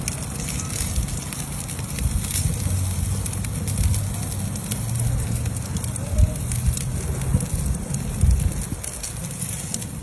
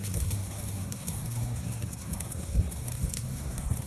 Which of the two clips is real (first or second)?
first